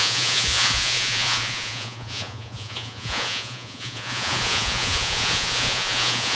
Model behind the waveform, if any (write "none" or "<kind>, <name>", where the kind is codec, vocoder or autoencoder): vocoder, Vocos